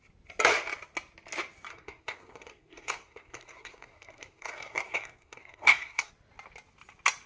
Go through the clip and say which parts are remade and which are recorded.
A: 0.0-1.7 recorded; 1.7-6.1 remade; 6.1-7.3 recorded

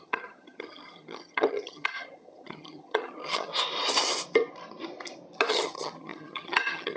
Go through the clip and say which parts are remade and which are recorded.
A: 0.0-3.5 remade; 3.5-5.5 recorded; 5.5-7.0 remade

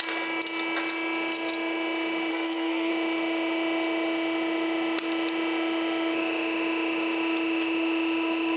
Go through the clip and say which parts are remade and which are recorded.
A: 0.0-2.3 recorded; 2.3-2.9 remade; 2.9-8.6 recorded

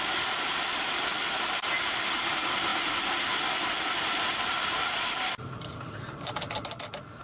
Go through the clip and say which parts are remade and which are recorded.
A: 0.0-7.2 recorded

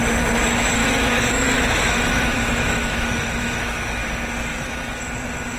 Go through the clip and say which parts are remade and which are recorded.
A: 0.0-0.8 recorded; 0.8-4.0 remade; 4.0-4.5 recorded; 4.5-5.0 remade; 5.0-5.6 recorded